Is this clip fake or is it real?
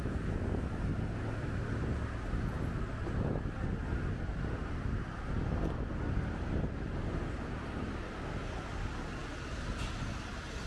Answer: real